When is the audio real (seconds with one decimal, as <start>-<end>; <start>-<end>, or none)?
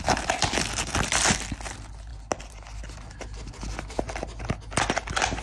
0.0-5.4